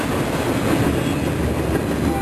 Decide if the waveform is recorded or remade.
recorded